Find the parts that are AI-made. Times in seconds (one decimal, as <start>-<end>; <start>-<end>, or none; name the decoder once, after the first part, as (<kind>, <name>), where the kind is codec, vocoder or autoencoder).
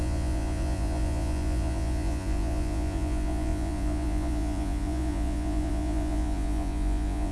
0.0-7.3 (vocoder, Vocos)